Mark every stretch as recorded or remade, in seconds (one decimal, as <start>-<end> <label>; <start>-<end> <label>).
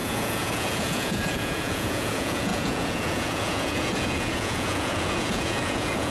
0.0-6.1 remade